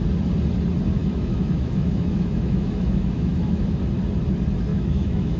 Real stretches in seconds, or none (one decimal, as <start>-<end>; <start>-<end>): 0.0-1.0; 3.8-4.7